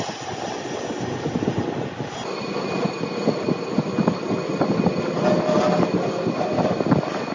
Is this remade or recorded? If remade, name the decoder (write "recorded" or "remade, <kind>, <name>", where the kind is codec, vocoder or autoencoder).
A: recorded